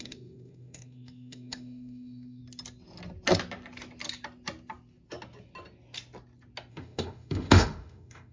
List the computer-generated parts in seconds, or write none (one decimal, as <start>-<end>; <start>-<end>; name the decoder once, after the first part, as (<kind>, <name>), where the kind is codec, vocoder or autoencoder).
0.0-2.4 (autoencoder, DAC-VAE); 6.7-8.3